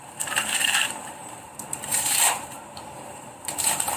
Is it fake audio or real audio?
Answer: fake